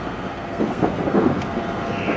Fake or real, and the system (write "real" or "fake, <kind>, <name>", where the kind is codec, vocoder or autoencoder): fake, codec, SNAC